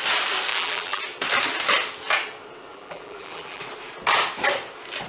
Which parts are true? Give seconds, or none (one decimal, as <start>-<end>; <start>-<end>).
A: 0.0-0.5; 1.0-2.7; 3.6-5.1